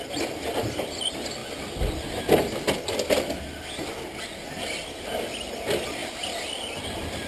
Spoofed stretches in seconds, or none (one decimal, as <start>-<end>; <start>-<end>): none